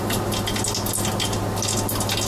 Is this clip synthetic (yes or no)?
no